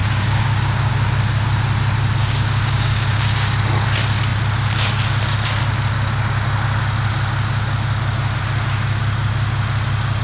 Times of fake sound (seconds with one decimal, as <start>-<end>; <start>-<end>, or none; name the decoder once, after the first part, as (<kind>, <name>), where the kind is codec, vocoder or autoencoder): 0.0-0.9 (codec, DAC); 2.2-3.6